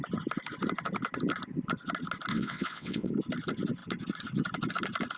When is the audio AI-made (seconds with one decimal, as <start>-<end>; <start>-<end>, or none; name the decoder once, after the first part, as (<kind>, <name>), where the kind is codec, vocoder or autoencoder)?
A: 2.3-3.1 (vocoder, WaveNeXt)